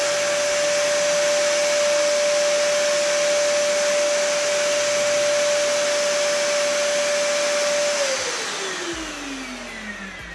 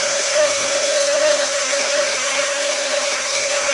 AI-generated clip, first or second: second